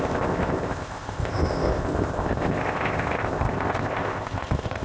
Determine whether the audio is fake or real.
fake